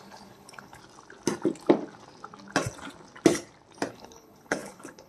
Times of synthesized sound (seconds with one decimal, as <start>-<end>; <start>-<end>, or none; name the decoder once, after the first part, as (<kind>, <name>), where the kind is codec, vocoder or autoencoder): 0.0-0.8 (codec, HILCodec); 3.9-5.1